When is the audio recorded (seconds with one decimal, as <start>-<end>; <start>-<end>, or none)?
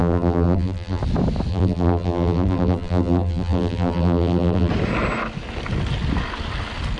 1.0-1.5; 4.7-7.0